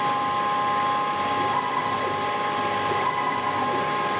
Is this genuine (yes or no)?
yes